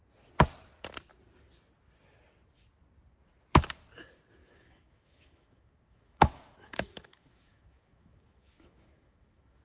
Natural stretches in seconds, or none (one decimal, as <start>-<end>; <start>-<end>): 0.0-4.4